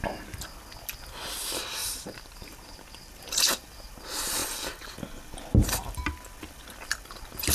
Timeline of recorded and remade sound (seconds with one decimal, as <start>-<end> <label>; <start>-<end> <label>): 0.0-1.8 recorded; 1.8-3.2 remade; 3.2-7.5 recorded